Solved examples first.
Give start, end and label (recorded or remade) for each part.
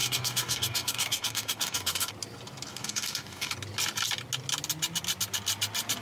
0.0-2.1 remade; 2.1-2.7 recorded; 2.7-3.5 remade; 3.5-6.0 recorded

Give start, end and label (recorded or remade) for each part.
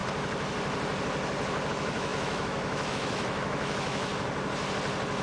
0.0-1.7 recorded; 1.7-4.1 remade; 4.1-5.2 recorded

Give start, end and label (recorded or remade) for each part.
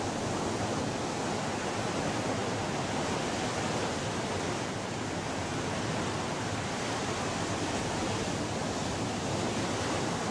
0.0-10.3 recorded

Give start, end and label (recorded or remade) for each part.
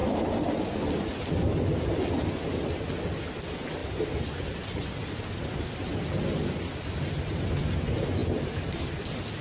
0.0-1.9 remade; 1.9-3.8 recorded; 3.8-4.4 remade; 4.4-9.4 recorded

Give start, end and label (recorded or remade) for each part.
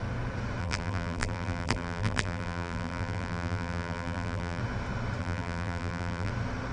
0.0-0.6 recorded; 0.6-4.6 remade; 4.6-5.2 recorded; 5.2-6.3 remade; 6.3-6.7 recorded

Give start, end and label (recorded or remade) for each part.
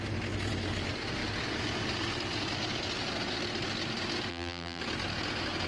0.0-4.3 recorded; 4.3-4.8 remade; 4.8-5.7 recorded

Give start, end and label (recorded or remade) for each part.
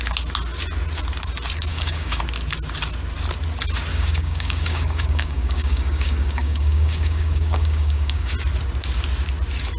0.0-1.7 recorded; 1.7-2.2 remade; 2.2-3.9 recorded; 3.9-8.3 remade; 8.3-9.8 recorded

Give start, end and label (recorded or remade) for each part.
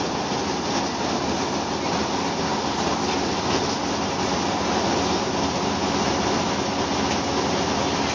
0.0-8.1 recorded